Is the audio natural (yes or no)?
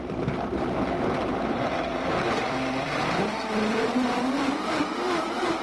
no